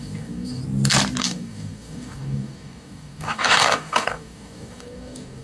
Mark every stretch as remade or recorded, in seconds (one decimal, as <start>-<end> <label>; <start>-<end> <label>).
0.0-0.6 remade; 0.6-1.2 recorded; 1.2-5.4 remade